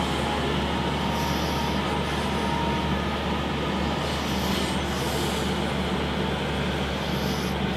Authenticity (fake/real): real